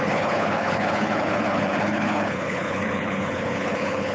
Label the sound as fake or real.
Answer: fake